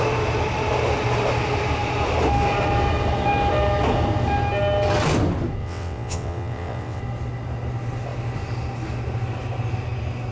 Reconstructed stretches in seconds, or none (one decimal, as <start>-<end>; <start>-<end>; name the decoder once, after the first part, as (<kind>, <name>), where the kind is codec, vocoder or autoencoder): 5.6-7.0 (vocoder, WaveNeXt)